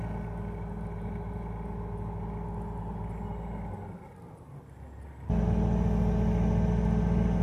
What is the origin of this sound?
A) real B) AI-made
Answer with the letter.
A